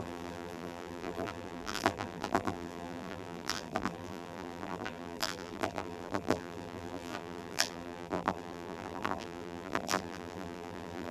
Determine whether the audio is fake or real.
fake